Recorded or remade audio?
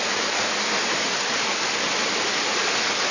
recorded